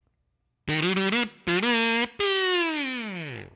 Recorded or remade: recorded